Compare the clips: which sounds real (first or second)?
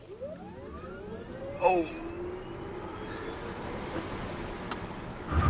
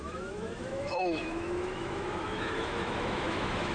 first